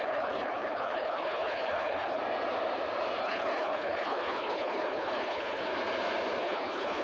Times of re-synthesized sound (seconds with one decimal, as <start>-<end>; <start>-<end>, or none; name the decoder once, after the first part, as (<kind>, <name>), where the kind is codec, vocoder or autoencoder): 0.0-2.2 (codec, HILCodec); 3.2-5.7; 6.4-7.0